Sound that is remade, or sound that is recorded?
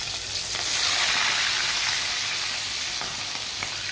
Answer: recorded